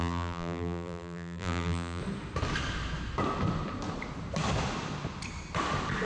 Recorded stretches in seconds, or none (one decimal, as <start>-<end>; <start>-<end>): 2.0-6.1